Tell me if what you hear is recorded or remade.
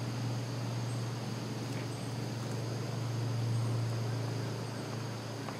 recorded